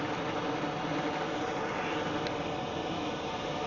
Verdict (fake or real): real